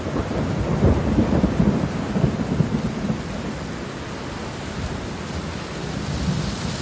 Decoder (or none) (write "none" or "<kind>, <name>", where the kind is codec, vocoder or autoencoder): none